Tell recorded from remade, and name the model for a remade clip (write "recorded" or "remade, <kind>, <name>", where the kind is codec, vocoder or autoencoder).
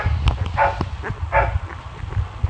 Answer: recorded